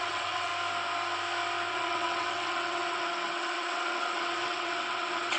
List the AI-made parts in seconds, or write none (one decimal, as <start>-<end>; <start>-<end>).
0.0-0.5; 1.7-5.4